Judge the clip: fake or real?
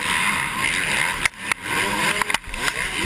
real